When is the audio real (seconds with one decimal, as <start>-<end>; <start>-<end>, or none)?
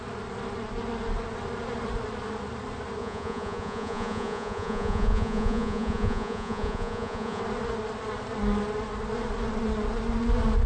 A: 0.0-3.0; 7.4-10.7